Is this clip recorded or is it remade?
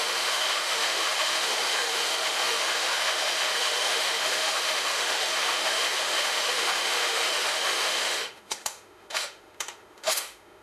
remade